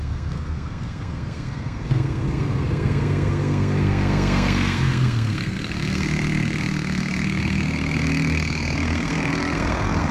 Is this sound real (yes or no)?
no